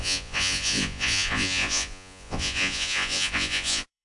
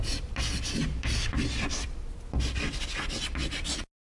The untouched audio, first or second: second